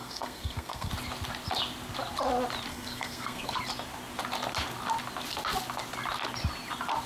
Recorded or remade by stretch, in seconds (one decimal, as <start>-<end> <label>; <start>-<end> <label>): 0.0-0.9 remade; 0.9-2.7 recorded; 2.7-3.6 remade; 3.6-7.1 recorded